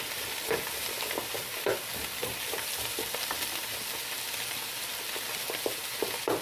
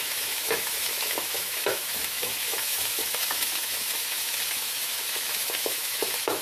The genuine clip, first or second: first